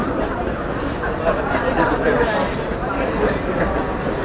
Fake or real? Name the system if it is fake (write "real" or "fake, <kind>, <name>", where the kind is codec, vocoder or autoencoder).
fake, vocoder, BigVGAN v2